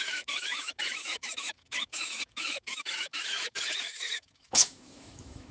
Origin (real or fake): fake